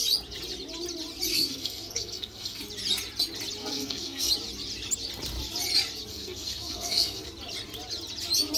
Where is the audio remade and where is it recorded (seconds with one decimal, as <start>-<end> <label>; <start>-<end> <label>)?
0.0-1.3 recorded; 1.3-2.6 remade; 2.6-3.6 recorded; 3.6-4.3 remade; 4.3-6.1 recorded; 6.1-7.3 remade; 7.3-8.6 recorded